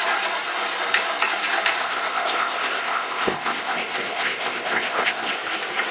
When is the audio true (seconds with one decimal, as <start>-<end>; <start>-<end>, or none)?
0.0-1.8; 5.3-5.9